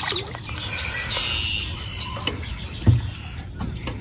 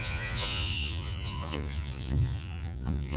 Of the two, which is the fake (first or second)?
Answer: second